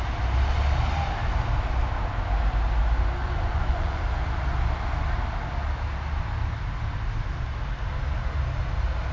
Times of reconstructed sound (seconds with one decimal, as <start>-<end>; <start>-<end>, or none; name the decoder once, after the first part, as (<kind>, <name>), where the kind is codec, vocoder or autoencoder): 3.2-4.0 (vocoder, Vocos)